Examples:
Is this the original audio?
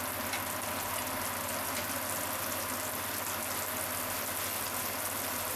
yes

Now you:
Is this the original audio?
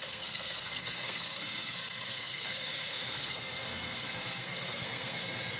no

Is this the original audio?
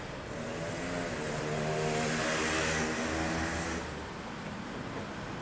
yes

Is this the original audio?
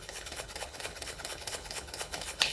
no